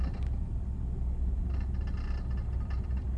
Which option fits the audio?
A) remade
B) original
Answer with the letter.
B